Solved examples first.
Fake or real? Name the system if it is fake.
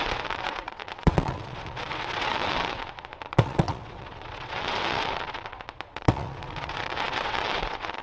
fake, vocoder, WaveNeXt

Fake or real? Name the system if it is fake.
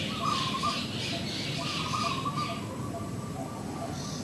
real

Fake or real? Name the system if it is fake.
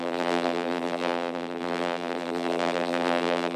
fake, vocoder, BigVGAN v2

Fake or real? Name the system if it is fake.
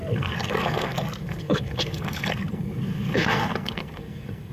fake, codec, SNAC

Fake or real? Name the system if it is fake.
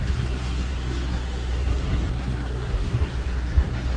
fake, codec, SNAC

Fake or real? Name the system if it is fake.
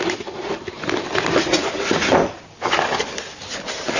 real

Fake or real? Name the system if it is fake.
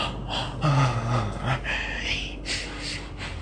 real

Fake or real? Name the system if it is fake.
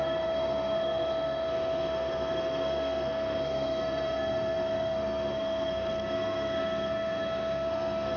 fake, codec, SNAC